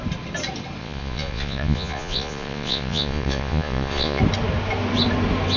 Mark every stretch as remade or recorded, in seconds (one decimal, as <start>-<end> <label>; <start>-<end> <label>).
0.0-0.8 recorded; 0.8-4.2 remade; 4.2-5.6 recorded